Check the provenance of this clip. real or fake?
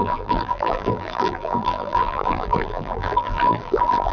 fake